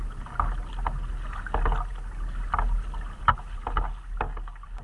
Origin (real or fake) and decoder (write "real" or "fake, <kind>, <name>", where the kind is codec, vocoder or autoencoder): real